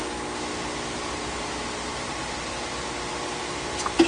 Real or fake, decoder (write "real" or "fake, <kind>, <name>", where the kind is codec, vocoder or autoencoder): real